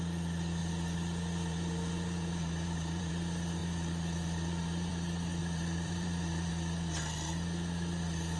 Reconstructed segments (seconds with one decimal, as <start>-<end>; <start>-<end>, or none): 0.6-3.1; 3.6-4.9; 5.4-6.5